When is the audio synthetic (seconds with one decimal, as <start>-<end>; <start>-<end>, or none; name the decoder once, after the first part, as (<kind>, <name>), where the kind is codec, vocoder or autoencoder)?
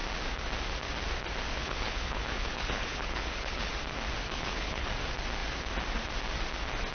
1.5-3.7 (codec, HILCodec); 4.3-4.9